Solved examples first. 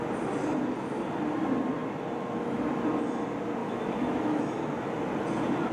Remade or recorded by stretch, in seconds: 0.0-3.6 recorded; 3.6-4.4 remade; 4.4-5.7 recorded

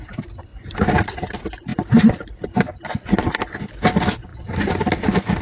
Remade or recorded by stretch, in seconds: 0.0-5.4 recorded

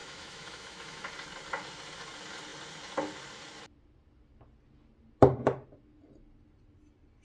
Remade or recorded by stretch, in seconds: 0.0-1.1 remade; 1.1-7.2 recorded

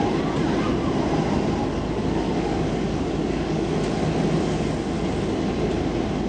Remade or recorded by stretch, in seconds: 0.0-1.6 recorded; 1.6-3.7 remade; 3.7-6.3 recorded

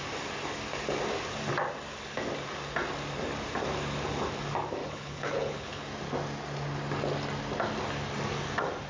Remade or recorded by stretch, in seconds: 0.0-4.8 recorded; 4.8-5.8 remade; 5.8-8.9 recorded